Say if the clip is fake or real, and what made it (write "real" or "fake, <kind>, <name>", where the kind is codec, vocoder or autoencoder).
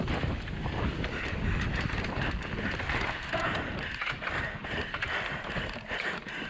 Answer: real